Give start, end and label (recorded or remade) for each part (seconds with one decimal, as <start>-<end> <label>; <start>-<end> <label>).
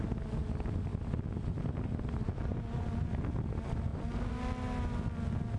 0.0-5.6 recorded